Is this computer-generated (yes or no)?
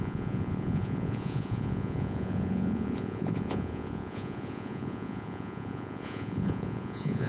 yes